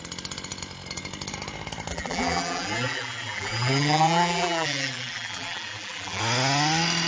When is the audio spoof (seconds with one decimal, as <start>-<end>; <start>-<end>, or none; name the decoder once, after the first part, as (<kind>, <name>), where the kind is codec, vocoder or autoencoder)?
1.9-6.2 (vocoder, BigVGAN v2)